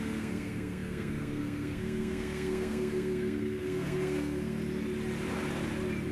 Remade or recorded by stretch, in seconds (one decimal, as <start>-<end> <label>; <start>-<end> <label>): 0.0-4.6 remade; 4.6-6.1 recorded